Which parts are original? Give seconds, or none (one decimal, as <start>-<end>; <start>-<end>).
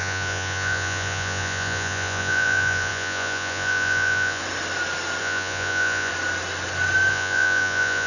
4.4-5.2; 6.1-7.1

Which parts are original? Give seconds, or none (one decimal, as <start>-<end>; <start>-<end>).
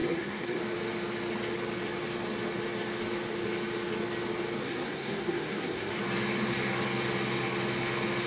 0.6-4.6; 5.9-8.3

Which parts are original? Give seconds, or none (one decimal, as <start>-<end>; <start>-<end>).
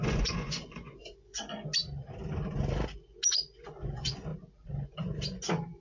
1.5-3.3; 4.3-5.8